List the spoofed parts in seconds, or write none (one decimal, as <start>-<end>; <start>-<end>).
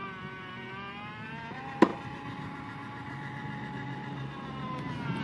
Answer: none